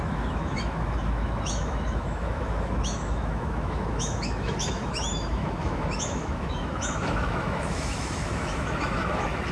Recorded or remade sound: remade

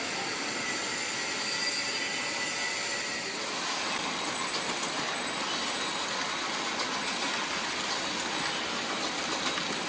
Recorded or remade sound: recorded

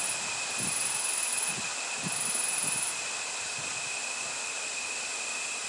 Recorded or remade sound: recorded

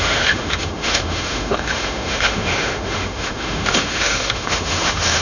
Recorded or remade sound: remade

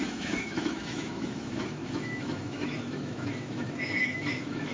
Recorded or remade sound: remade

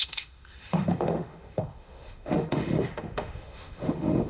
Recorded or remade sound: remade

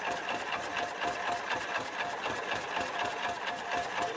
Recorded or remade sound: recorded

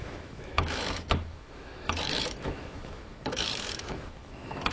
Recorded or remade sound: remade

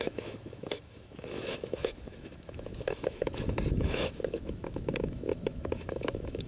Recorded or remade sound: remade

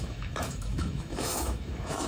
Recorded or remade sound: remade